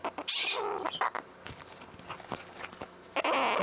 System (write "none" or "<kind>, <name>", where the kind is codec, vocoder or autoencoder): none